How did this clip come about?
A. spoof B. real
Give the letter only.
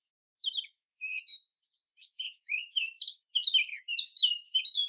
A